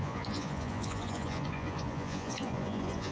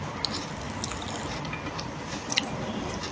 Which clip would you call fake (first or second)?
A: first